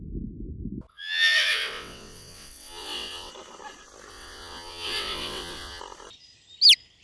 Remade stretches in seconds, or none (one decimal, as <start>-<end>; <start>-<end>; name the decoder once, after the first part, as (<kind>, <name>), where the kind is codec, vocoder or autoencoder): 0.9-3.3 (vocoder, WaveNeXt); 4.1-5.8